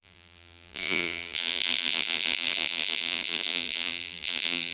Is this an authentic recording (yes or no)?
no